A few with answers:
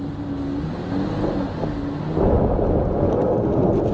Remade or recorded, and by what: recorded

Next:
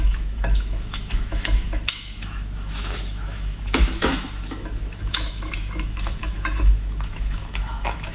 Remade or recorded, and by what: remade, autoencoder, DAC-VAE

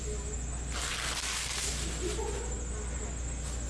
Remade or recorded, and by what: recorded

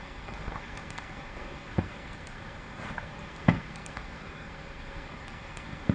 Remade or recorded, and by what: remade, codec, SNAC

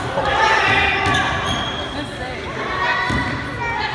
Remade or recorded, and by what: recorded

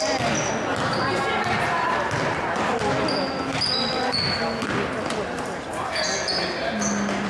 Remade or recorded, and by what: recorded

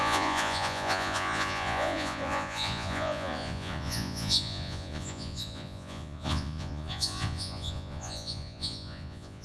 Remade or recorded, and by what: remade, vocoder, Vocos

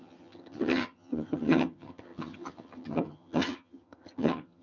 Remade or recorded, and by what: remade, vocoder, HiFi-GAN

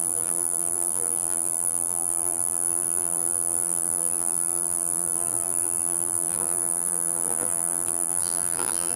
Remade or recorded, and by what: remade, vocoder, BigVGAN v2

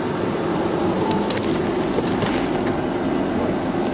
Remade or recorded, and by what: recorded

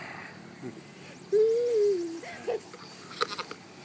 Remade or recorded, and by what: recorded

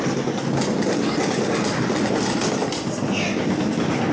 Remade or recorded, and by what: recorded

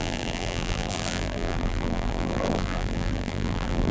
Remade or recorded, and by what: remade, vocoder, BigVGAN v2